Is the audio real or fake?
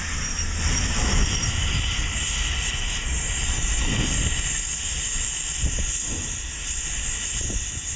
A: fake